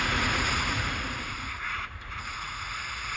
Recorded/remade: remade